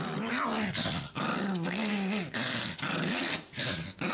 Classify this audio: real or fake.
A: real